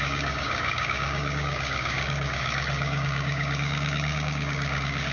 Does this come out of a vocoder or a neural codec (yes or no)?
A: yes